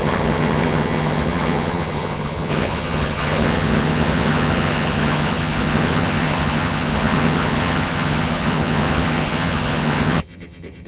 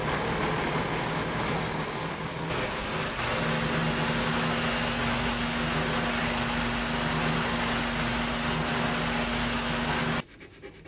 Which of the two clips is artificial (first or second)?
first